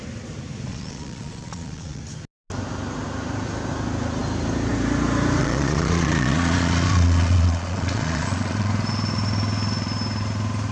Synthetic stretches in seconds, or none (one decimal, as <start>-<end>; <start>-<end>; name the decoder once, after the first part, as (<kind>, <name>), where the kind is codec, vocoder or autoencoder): 0.7-2.0 (vocoder, Vocos); 5.4-8.7